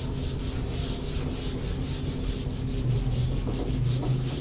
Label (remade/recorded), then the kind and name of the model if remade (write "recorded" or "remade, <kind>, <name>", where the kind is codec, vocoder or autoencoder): recorded